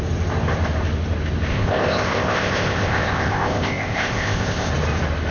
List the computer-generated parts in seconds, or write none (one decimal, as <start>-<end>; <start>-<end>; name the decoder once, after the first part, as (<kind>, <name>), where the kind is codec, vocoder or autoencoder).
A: 1.5-4.7 (codec, ZipCodec)